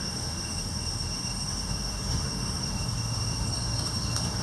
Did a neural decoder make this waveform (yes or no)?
yes